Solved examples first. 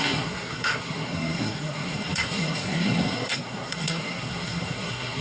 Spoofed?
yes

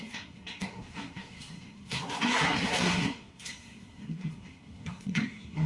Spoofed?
yes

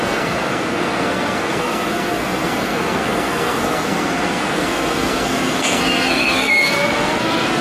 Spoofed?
yes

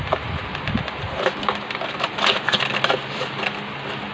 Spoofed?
no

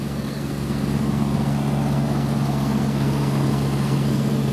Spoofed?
yes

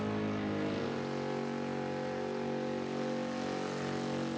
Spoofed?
no